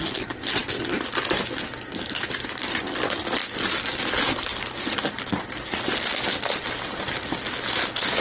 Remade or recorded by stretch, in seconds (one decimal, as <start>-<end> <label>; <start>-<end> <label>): 0.0-8.2 recorded